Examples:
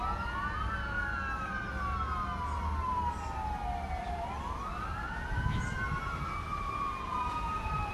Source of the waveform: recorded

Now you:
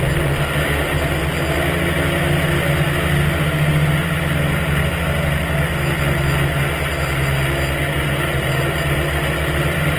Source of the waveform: recorded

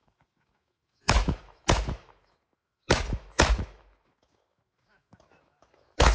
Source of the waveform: remade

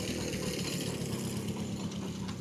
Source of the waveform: recorded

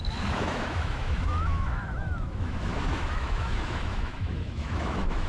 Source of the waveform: remade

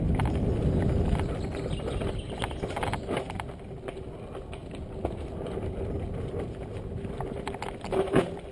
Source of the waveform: recorded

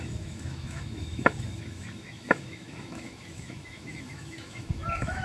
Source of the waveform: remade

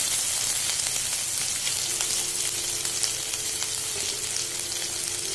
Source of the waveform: recorded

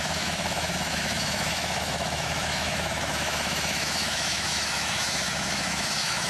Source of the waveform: remade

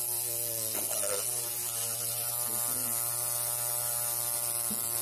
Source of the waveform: recorded